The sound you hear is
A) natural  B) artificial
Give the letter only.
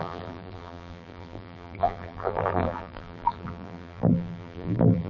B